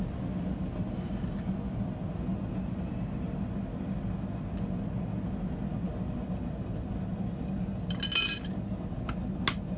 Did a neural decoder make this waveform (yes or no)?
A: no